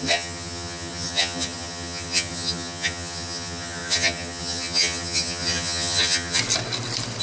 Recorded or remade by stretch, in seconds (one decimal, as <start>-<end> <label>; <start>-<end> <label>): 0.0-6.4 remade; 6.4-7.2 recorded